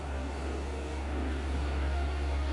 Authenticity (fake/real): fake